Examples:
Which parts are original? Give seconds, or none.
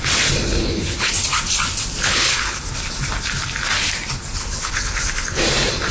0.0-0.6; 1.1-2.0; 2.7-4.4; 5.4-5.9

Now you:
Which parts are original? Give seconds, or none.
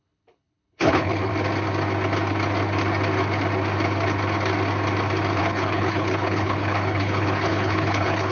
1.3-5.4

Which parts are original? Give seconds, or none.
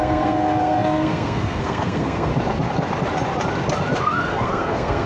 2.3-4.0